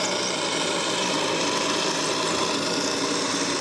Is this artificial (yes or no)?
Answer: no